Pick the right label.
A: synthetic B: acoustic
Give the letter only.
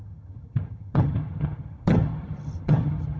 A